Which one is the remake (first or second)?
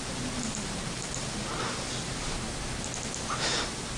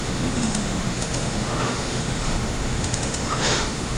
second